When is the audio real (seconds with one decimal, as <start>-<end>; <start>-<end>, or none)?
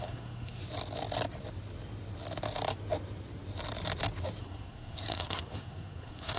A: 0.6-4.4